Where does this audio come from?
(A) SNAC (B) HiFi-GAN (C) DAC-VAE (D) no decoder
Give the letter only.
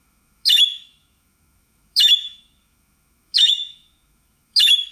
C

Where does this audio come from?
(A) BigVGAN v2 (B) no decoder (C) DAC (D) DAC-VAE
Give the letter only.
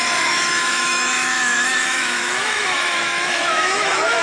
D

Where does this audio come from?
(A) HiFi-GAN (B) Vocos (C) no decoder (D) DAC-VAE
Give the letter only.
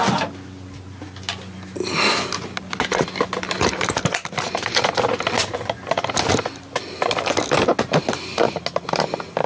C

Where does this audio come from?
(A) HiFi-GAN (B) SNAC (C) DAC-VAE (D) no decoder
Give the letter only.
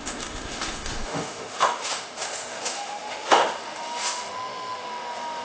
C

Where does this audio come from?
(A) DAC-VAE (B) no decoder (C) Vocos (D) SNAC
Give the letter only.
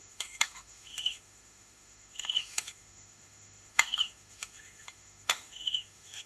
A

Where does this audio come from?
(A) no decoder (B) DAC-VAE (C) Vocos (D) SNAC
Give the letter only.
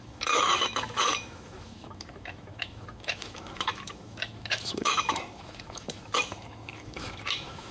B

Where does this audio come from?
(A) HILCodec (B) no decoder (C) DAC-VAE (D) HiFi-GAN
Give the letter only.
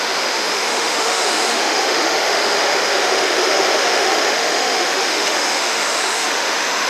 C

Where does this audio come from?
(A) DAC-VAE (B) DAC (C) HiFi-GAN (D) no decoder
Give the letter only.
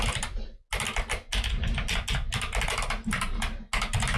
D